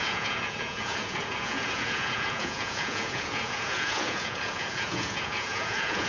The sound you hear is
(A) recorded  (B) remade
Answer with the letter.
B